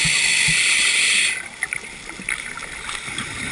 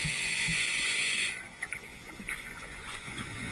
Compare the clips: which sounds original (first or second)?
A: first